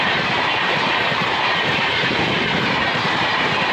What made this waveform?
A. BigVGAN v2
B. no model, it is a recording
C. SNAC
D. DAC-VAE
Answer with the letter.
A